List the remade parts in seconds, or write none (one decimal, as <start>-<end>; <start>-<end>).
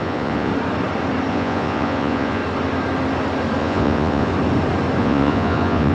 0.0-0.5; 1.3-2.4; 3.6-4.3; 5.0-5.9